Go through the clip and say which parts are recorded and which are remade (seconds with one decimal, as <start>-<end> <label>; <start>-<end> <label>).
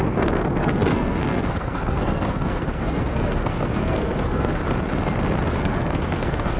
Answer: 0.0-4.6 remade; 4.6-5.5 recorded; 5.5-6.6 remade